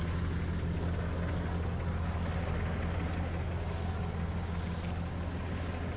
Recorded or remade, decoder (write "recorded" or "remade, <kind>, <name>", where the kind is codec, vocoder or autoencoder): recorded